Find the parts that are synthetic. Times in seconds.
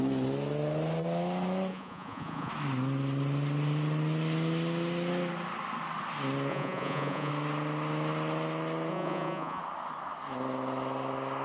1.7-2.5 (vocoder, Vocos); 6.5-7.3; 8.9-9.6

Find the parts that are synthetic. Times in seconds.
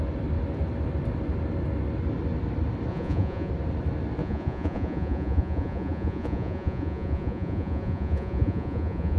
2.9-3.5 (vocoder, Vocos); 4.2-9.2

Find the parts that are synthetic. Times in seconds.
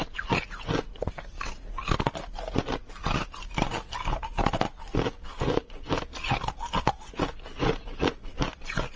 7.6-8.2 (vocoder, Vocos)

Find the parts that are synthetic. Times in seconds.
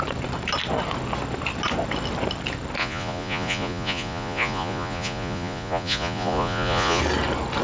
2.8-7.0 (vocoder, Vocos)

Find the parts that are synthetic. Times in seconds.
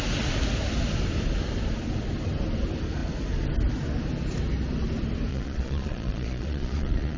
5.3-7.2 (vocoder, Vocos)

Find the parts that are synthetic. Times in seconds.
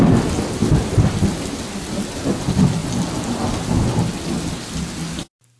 none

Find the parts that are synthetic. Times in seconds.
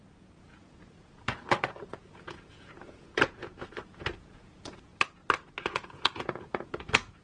0.0-4.9 (vocoder, Vocos); 5.6-7.2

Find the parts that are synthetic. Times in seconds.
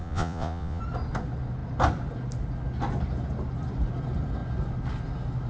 0.0-0.8 (vocoder, Vocos)